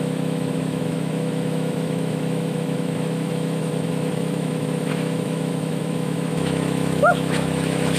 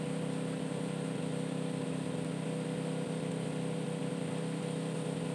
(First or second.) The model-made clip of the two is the first